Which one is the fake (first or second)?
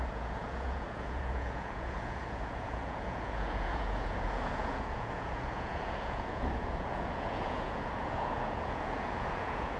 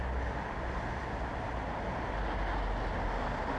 first